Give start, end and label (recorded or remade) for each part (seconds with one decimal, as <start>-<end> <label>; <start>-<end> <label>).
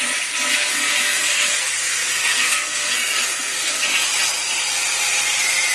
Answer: 0.0-0.5 recorded; 0.5-3.8 remade; 3.8-5.7 recorded